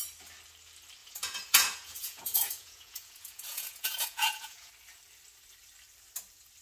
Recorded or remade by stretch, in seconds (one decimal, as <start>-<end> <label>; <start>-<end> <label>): 0.0-1.0 recorded; 1.0-4.7 remade; 4.7-6.6 recorded